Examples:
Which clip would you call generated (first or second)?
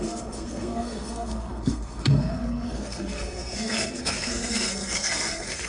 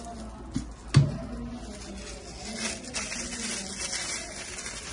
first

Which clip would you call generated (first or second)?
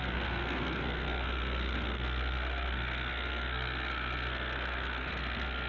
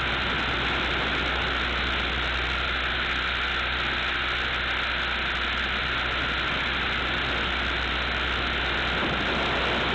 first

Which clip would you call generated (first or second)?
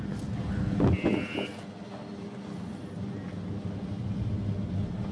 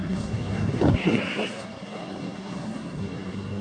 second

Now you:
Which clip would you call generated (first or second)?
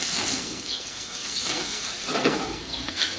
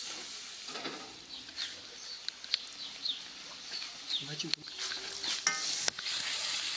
first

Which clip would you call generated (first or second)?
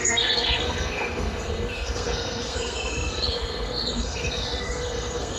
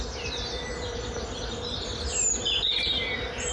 first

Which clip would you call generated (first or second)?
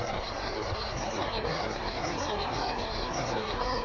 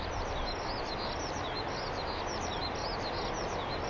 first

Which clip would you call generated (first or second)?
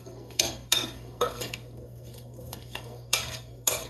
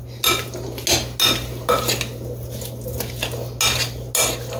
first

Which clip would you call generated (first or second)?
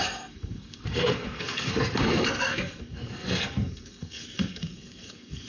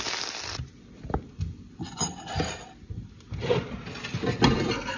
first